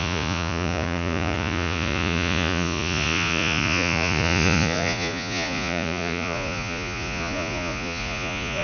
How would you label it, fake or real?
fake